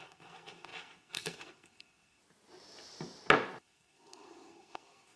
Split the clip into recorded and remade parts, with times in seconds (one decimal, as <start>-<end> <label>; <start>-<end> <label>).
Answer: 0.0-2.2 remade; 2.2-3.6 recorded; 3.6-5.2 remade